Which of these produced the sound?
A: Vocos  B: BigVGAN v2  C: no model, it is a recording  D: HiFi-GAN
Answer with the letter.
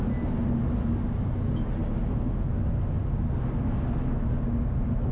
C